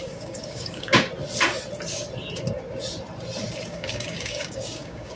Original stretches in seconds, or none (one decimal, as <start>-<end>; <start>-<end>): 1.1-3.7